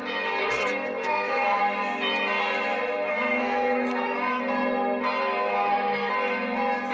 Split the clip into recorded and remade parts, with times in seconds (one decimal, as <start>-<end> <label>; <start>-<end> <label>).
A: 0.0-0.4 recorded; 0.4-1.6 remade; 1.6-3.1 recorded; 3.1-4.4 remade; 4.4-5.5 recorded; 5.5-6.1 remade; 6.1-6.9 recorded